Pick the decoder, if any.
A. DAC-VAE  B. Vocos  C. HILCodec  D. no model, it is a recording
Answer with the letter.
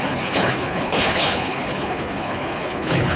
C